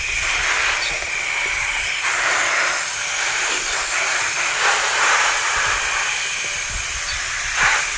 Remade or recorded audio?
recorded